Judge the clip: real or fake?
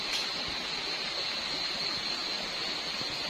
real